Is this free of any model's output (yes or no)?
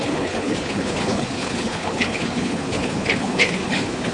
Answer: no